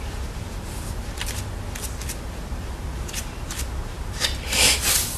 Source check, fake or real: fake